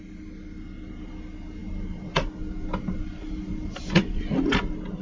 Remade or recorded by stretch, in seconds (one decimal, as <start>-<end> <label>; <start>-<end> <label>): 0.0-5.0 recorded